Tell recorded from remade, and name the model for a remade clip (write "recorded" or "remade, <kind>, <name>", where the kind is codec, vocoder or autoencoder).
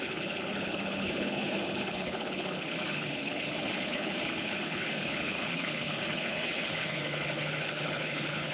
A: remade, codec, HILCodec